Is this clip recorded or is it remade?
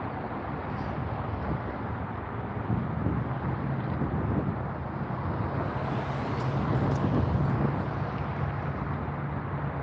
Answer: recorded